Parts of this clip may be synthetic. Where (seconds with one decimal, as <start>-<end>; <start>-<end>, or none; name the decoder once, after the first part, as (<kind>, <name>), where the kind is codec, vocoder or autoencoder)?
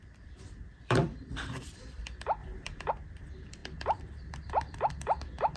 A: 0.0-5.6 (vocoder, BigVGAN v2)